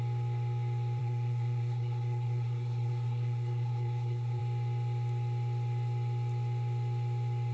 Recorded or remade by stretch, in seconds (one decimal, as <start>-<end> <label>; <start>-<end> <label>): 0.0-1.0 recorded; 1.0-4.4 remade; 4.4-7.5 recorded